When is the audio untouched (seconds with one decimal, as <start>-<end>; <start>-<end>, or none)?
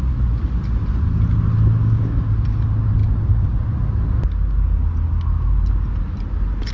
0.0-1.8; 2.3-6.7